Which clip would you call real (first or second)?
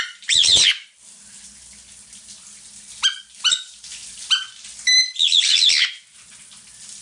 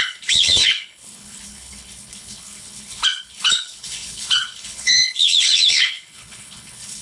first